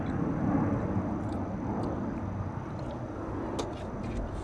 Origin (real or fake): real